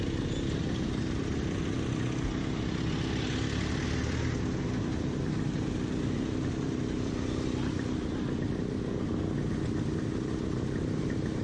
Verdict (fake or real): real